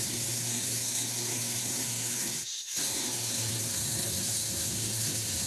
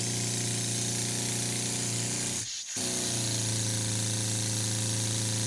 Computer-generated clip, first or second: first